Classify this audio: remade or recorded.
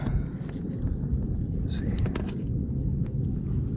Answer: recorded